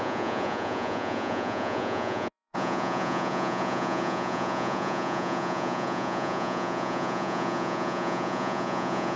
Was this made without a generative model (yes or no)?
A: no